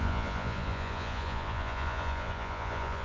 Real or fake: fake